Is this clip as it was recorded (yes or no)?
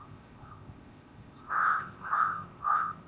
no